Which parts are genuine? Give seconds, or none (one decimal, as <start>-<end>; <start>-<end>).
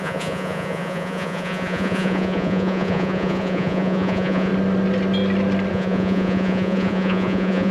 4.5-5.7